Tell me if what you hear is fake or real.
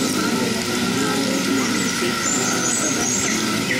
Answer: real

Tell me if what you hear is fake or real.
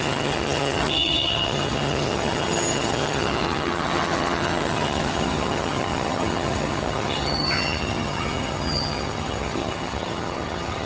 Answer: fake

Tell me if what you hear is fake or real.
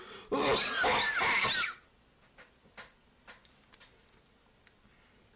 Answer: real